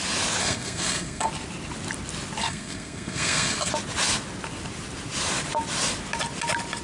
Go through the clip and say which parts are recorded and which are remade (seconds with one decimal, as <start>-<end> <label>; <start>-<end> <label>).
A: 0.0-0.4 recorded; 0.4-1.3 remade; 1.3-2.4 recorded; 2.4-3.7 remade; 3.7-6.8 recorded